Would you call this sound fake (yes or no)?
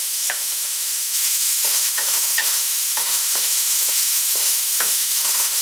yes